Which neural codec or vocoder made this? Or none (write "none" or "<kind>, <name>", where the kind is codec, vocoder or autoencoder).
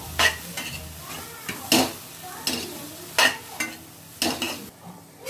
none